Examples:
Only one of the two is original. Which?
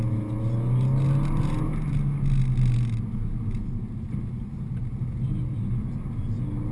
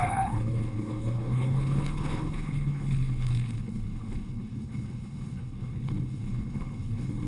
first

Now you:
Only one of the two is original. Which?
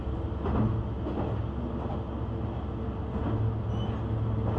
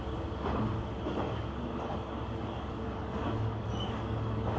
first